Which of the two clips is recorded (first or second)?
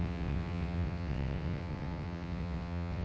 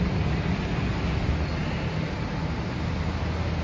second